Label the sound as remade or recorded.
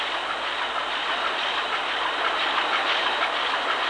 recorded